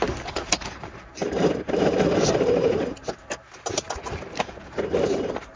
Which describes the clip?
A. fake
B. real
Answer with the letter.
B